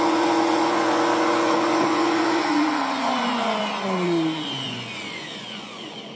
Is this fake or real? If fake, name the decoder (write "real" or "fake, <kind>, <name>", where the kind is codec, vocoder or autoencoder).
fake, vocoder, Vocos